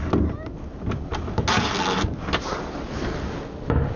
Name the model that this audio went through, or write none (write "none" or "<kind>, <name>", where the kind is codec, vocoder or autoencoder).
none